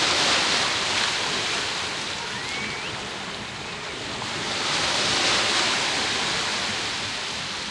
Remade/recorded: recorded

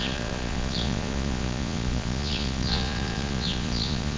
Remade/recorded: remade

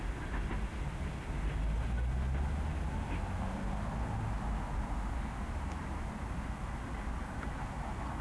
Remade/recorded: recorded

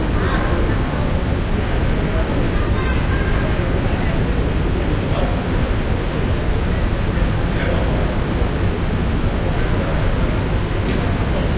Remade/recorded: recorded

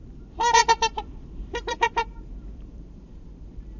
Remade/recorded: remade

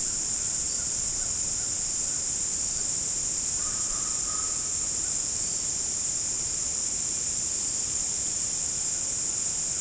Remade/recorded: remade